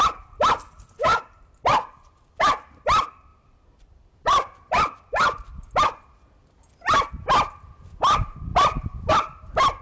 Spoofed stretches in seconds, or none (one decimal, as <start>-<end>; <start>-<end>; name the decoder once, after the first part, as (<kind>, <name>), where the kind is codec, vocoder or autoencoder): 1.7-2.4 (vocoder, BigVGAN v2); 3.3-7.1; 8.5-9.1

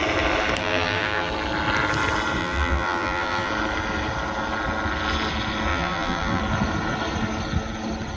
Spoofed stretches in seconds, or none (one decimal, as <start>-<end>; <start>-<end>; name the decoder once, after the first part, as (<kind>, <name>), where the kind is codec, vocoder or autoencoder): 0.6-1.3 (vocoder, BigVGAN v2); 2.4-3.5; 5.7-6.4

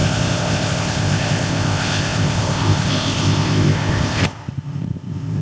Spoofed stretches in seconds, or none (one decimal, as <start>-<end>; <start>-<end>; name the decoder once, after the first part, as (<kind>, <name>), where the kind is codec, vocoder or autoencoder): 0.0-5.4 (codec, ZipCodec)

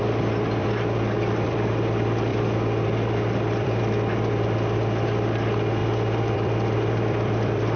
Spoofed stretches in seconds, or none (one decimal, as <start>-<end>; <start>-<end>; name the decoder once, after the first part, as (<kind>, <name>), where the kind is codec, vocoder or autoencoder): 0.6-1.7 (vocoder, BigVGAN v2); 2.3-3.8; 5.8-7.8

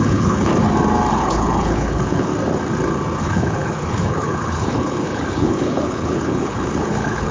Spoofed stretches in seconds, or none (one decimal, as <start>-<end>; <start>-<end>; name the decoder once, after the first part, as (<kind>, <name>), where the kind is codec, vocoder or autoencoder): 0.0-0.5 (codec, HILCodec); 1.1-2.3; 3.2-7.3